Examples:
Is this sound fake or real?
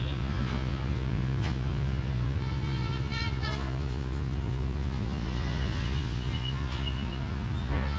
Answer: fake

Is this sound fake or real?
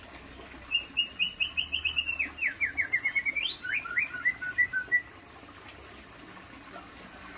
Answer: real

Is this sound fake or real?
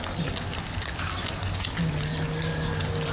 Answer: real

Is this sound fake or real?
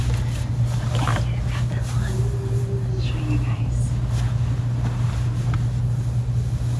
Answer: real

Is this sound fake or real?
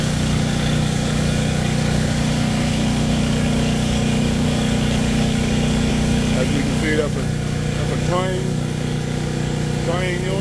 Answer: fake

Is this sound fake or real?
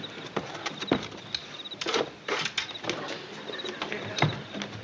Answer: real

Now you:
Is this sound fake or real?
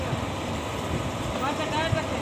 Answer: real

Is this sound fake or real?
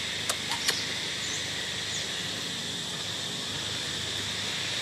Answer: real